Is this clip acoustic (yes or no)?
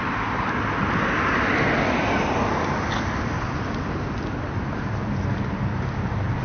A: yes